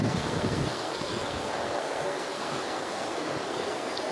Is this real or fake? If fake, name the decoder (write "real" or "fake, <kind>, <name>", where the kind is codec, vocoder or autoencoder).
fake, codec, SNAC